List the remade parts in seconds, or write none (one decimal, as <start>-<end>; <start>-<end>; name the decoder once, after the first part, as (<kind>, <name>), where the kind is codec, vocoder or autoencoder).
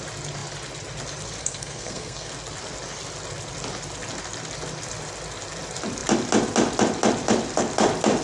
1.4-2.3 (codec, SNAC)